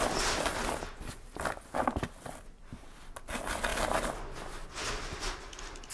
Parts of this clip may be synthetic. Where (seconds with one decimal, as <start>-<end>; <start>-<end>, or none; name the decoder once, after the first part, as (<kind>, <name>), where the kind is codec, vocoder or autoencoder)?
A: none